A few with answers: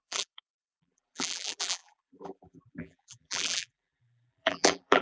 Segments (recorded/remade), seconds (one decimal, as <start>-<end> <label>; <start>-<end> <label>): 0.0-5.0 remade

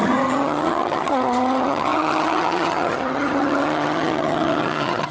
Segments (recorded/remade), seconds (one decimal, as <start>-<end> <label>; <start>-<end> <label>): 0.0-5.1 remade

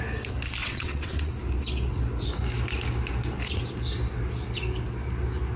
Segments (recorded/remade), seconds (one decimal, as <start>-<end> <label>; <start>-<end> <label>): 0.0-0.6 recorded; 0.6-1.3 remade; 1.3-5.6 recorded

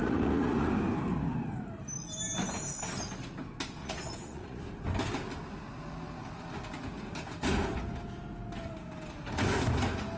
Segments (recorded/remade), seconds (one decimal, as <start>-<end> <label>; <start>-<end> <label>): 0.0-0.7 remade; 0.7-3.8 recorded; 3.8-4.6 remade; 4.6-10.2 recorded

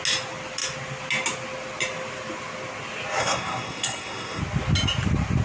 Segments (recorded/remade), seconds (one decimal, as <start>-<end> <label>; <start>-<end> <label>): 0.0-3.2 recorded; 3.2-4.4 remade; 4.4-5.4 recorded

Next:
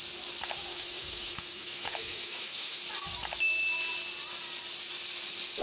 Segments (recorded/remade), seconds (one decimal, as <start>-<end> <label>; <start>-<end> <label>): 0.0-0.7 recorded; 0.7-2.8 remade; 2.8-5.6 recorded